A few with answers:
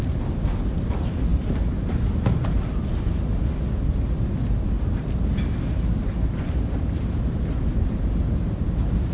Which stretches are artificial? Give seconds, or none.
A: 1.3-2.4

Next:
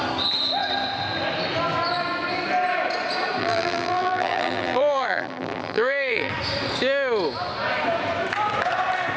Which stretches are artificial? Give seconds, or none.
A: 3.4-6.3